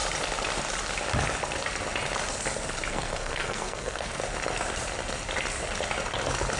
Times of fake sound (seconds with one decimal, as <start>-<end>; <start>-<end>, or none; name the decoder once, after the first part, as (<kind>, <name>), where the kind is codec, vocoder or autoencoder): 2.9-4.2 (codec, SNAC)